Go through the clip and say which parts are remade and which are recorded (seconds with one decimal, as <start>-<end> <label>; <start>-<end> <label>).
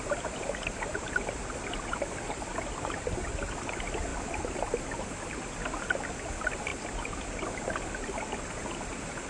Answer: 0.0-9.3 recorded